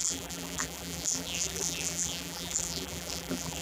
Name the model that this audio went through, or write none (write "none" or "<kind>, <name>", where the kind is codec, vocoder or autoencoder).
vocoder, BigVGAN v2